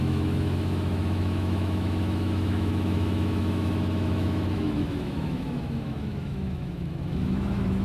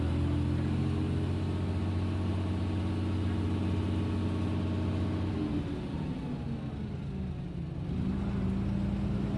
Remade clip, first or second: first